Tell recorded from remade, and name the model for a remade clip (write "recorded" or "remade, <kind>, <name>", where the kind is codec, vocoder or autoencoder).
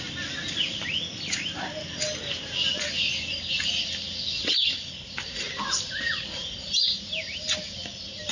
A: recorded